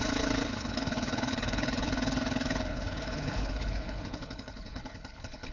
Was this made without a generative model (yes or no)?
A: no